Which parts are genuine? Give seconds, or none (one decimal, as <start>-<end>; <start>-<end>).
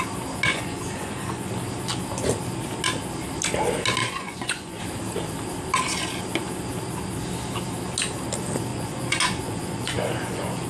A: 0.0-0.5; 1.5-4.0; 4.8-8.7